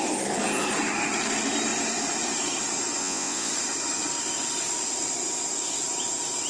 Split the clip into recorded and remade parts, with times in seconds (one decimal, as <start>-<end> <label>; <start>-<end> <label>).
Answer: 0.0-3.0 recorded; 3.0-3.5 remade; 3.5-6.5 recorded